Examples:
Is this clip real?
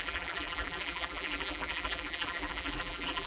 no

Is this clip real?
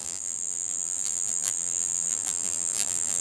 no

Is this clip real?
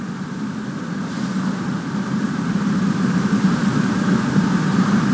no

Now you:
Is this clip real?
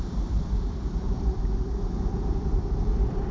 no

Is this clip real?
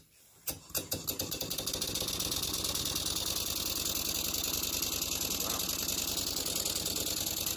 yes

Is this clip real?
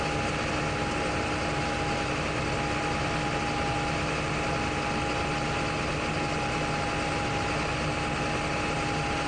yes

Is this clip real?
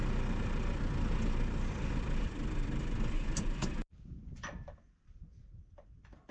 no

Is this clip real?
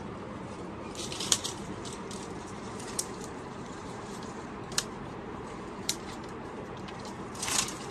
no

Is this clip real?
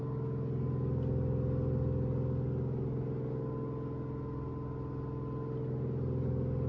yes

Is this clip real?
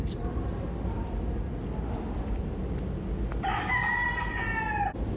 yes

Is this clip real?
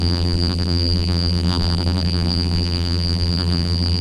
no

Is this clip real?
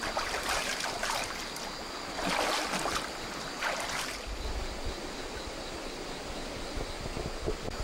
yes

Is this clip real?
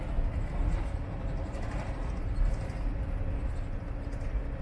yes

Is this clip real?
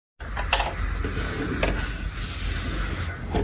yes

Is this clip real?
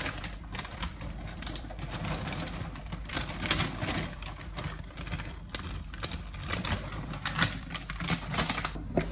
no